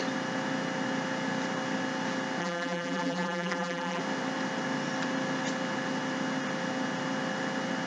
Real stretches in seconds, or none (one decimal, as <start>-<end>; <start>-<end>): 0.0-2.4; 4.0-7.9